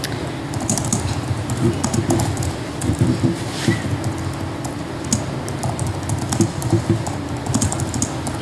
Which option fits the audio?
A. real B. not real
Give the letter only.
A